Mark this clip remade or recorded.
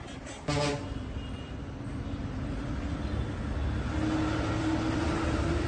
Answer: recorded